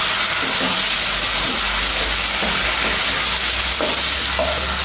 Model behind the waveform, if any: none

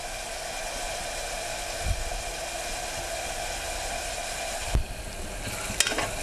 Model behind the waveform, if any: none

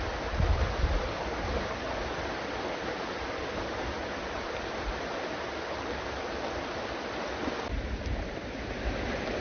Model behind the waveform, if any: none